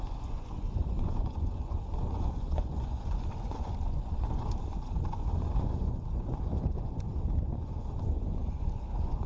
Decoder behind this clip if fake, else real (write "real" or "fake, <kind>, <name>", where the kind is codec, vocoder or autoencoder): fake, vocoder, Vocos